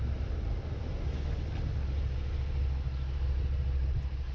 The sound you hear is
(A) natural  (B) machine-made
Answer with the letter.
A